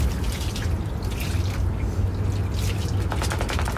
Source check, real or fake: real